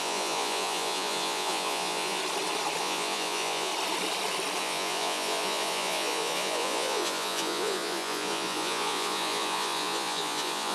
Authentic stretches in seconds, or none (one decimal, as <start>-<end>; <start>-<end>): 2.2-2.8; 3.7-4.6